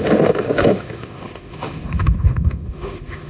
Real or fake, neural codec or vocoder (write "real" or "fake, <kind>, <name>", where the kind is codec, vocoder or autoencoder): fake, autoencoder, DAC-VAE